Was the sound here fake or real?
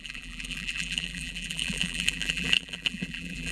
fake